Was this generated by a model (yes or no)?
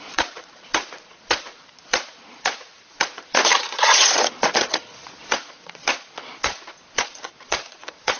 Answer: yes